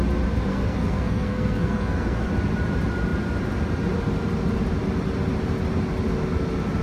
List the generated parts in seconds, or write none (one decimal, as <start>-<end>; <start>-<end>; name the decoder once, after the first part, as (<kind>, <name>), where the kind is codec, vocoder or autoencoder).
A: 0.5-2.3 (codec, SNAC)